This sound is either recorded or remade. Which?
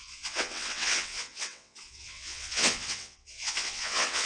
remade